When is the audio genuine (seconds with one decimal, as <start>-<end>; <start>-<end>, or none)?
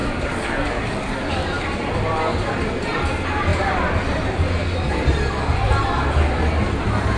1.6-7.2